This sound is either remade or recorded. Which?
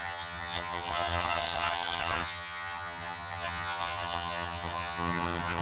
remade